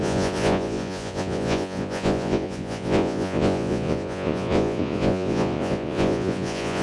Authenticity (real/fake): fake